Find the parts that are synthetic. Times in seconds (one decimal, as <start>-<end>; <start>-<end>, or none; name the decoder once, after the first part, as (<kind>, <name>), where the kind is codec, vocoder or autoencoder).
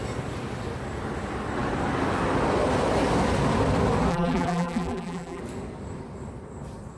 4.1-5.4 (vocoder, BigVGAN v2)